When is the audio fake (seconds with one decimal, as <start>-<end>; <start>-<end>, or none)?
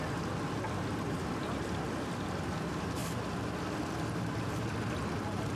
3.0-4.3